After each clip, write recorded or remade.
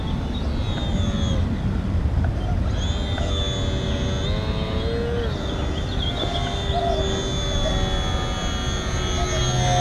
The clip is recorded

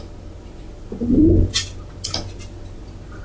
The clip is recorded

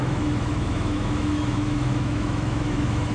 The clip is remade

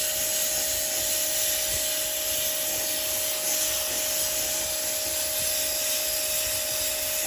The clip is recorded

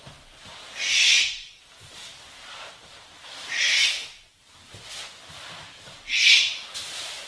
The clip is recorded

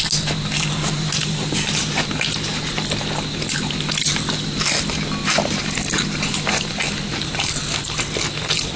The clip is recorded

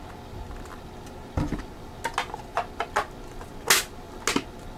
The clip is recorded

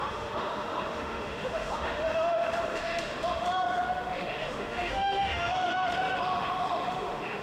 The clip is remade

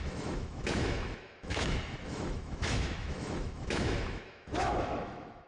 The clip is remade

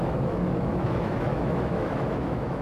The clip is remade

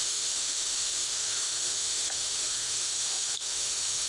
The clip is remade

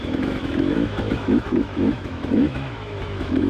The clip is remade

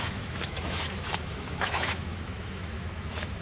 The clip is remade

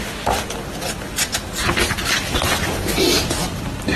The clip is recorded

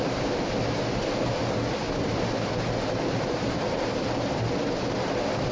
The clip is recorded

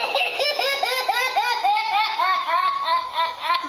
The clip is remade